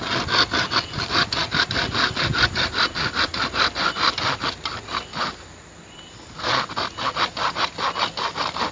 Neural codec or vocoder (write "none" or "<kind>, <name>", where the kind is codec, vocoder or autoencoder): none